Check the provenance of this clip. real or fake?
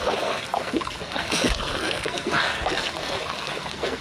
fake